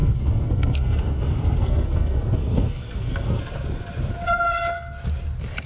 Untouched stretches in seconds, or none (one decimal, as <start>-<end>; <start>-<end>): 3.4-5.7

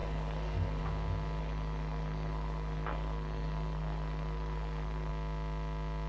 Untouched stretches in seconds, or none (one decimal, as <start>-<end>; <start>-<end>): 0.8-1.4; 5.1-6.1

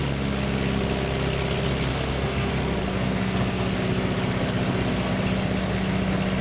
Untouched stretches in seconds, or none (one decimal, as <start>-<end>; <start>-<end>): 0.0-1.9; 2.5-2.9; 3.7-6.4

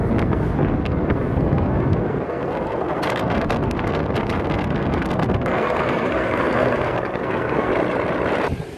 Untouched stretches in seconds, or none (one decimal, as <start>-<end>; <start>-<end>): 7.7-8.8

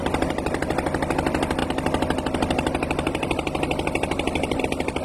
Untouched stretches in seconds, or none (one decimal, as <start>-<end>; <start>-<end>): 0.0-5.0

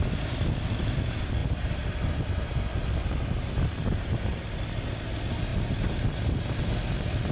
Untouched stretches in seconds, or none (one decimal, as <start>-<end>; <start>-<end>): 0.0-7.3

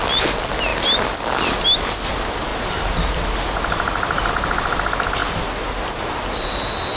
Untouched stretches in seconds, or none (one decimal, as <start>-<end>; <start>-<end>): 0.0-7.0

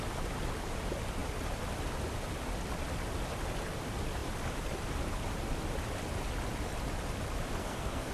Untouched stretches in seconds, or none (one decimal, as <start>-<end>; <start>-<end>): 0.0-7.6